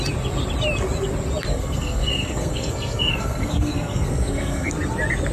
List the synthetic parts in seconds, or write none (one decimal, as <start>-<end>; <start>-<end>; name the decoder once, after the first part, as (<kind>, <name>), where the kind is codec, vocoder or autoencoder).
1.5-4.7 (codec, SNAC)